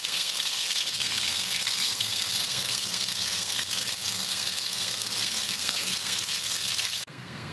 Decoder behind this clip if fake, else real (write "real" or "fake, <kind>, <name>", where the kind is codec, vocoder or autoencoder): fake, codec, SNAC